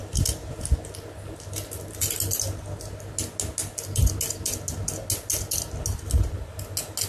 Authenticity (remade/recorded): recorded